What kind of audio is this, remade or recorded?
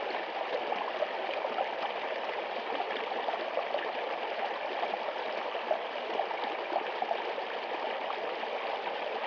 recorded